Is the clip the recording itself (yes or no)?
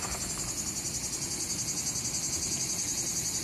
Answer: yes